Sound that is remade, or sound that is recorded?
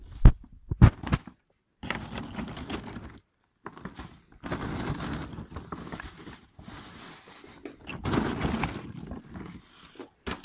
recorded